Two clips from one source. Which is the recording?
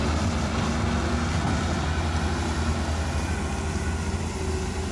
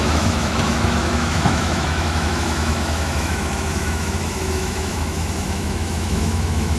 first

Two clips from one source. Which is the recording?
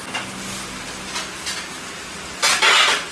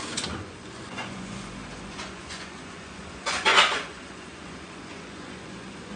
first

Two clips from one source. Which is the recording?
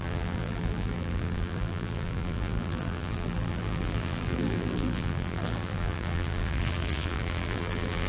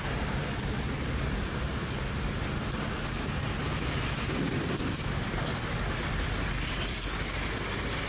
second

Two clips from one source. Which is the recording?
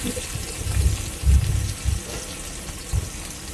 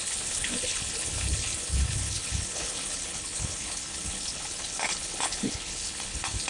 first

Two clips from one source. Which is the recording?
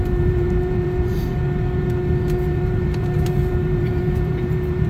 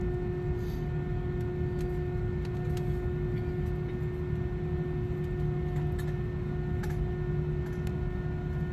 second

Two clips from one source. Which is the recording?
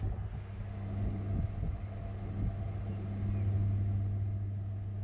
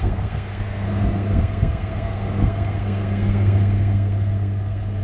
first